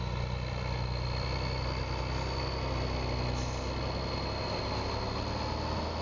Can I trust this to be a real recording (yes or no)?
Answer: yes